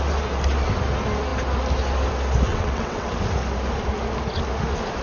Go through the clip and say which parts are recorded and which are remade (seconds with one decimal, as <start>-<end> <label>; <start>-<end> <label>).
0.0-2.5 recorded; 2.5-3.2 remade; 3.2-5.0 recorded